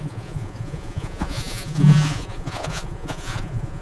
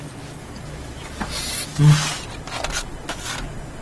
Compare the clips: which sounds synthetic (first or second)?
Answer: first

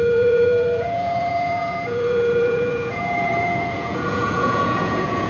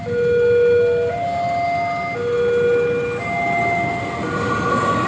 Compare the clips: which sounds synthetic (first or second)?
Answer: first